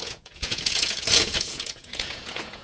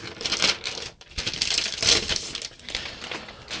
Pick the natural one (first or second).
second